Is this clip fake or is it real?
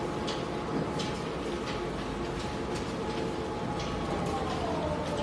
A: real